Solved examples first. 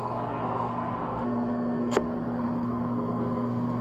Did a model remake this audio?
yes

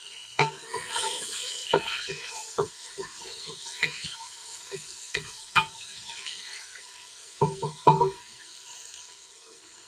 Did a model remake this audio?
yes